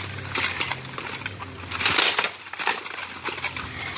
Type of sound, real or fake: real